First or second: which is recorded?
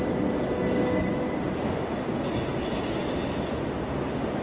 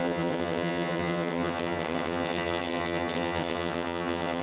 first